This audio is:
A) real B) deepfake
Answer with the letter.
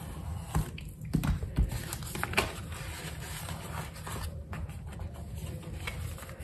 A